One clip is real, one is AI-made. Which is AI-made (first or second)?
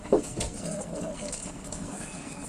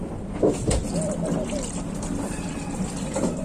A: first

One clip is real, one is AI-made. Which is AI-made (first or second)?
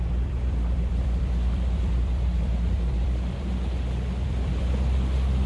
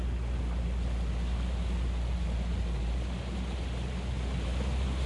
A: first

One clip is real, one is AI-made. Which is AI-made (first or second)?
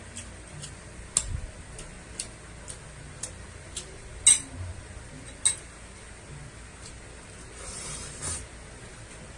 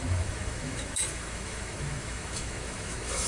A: second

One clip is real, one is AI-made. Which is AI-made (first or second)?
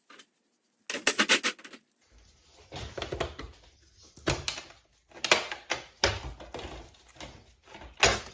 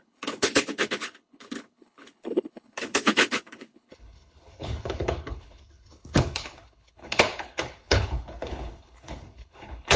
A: second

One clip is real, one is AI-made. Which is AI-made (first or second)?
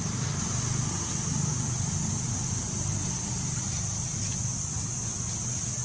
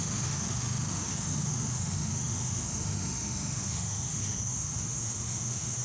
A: second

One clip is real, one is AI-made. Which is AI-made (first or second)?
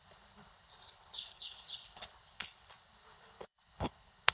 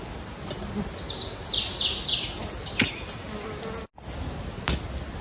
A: first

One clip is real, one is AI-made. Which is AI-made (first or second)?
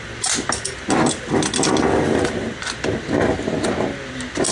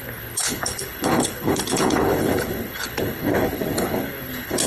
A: second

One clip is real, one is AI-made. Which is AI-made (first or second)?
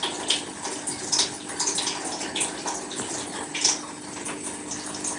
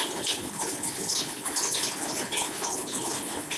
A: second